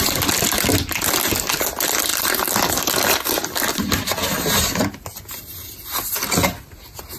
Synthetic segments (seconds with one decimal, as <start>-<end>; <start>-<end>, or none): none